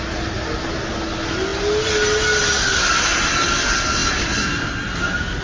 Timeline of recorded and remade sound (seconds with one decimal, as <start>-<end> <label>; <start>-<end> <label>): 0.0-5.4 recorded